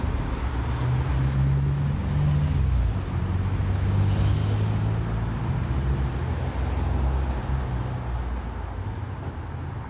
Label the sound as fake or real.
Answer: real